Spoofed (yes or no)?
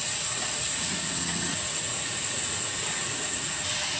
yes